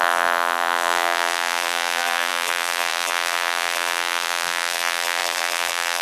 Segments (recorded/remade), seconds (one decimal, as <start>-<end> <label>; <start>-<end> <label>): 0.0-6.0 remade